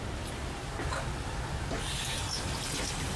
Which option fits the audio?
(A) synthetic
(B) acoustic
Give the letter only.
B